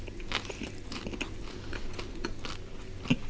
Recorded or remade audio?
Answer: recorded